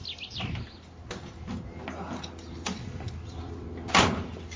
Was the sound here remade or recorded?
recorded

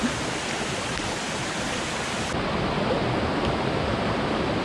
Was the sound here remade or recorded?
recorded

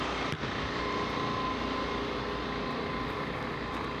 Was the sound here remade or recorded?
recorded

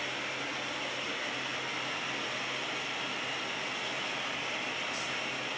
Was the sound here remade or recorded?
recorded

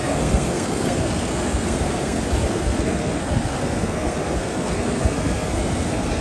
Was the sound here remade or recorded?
remade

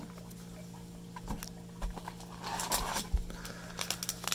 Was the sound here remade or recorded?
recorded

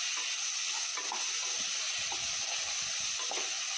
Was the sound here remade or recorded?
recorded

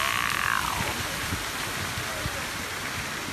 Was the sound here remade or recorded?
recorded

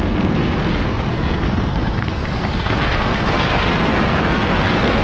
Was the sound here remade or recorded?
remade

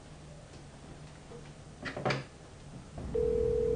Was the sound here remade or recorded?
recorded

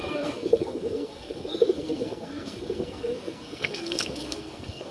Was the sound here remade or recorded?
remade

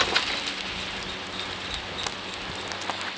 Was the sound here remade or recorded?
recorded